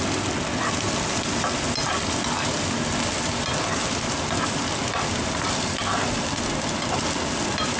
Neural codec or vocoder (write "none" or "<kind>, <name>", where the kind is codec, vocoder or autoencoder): none